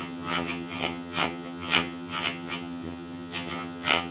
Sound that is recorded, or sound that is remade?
remade